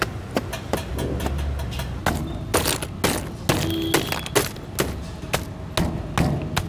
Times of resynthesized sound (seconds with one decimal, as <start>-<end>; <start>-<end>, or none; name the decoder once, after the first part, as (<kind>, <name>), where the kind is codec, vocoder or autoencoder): 0.0-0.9 (vocoder, BigVGAN v2)